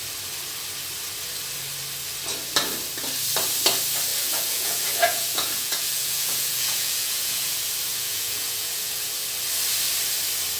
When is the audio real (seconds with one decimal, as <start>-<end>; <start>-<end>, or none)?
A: 0.0-4.1; 7.5-7.9; 9.1-10.6